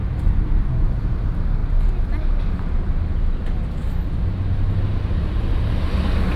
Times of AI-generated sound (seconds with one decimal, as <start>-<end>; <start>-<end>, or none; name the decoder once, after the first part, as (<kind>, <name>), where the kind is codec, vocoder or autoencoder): 0.0-1.2 (vocoder, BigVGAN v2)